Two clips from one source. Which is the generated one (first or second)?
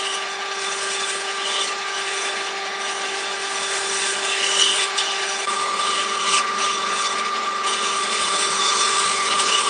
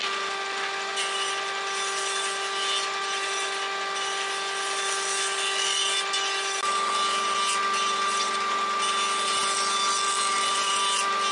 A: first